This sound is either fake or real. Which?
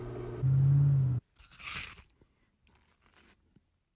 real